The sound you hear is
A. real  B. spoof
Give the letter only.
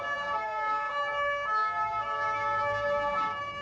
B